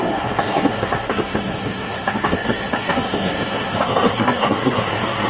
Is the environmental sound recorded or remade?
remade